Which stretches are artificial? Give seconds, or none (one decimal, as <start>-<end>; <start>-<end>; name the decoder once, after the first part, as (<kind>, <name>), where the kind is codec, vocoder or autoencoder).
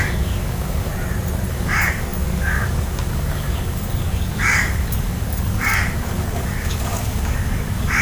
0.0-0.9 (codec, DAC); 1.5-8.0